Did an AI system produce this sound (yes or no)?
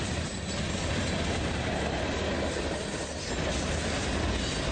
no